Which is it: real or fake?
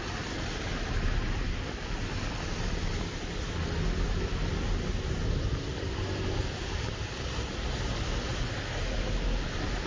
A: real